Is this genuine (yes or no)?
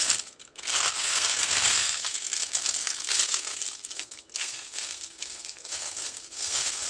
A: no